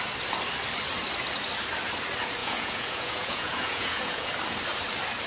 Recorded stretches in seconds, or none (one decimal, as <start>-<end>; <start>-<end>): 0.0-2.4; 4.3-5.3